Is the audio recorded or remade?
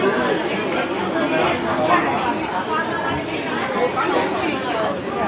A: recorded